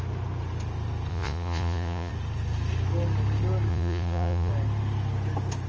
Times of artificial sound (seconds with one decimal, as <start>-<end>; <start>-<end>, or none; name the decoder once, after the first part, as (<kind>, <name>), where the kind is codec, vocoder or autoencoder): 1.1-2.1 (vocoder, Vocos); 3.7-4.5